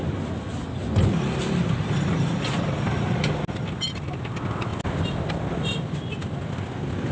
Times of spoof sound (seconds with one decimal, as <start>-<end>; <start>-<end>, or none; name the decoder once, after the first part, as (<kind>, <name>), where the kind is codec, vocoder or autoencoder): none